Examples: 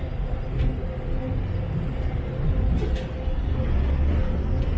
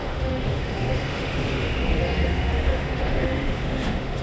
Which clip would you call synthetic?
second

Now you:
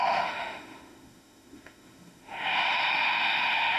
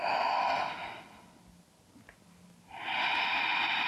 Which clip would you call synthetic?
first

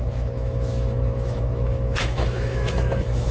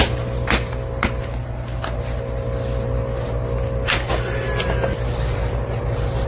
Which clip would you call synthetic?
first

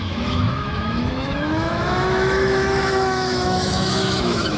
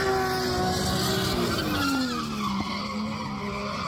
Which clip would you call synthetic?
first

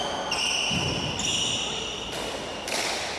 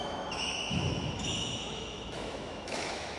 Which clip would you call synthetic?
second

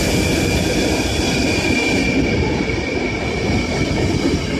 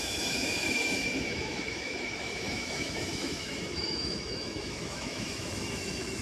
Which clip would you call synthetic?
second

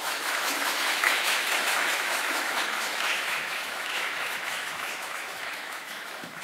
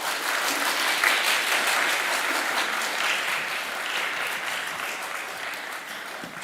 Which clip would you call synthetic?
first